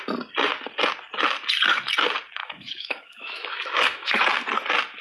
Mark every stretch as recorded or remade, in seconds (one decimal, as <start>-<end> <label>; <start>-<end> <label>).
0.0-2.4 recorded; 2.4-4.2 remade; 4.2-5.0 recorded